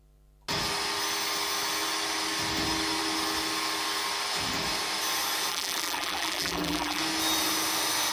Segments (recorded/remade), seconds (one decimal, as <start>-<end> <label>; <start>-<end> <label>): 0.0-5.5 recorded; 5.5-7.0 remade; 7.0-8.1 recorded